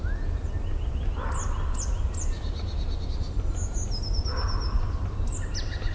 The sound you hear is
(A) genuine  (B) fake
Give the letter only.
A